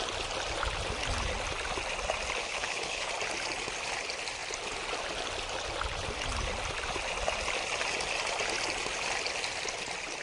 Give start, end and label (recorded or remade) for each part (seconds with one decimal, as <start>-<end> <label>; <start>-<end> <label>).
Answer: 0.0-2.4 recorded; 2.4-3.1 remade; 3.1-10.2 recorded